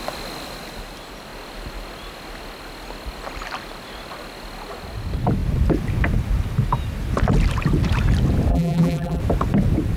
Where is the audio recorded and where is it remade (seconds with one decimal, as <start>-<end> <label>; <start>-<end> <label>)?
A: 0.0-8.5 recorded; 8.5-9.2 remade; 9.2-10.0 recorded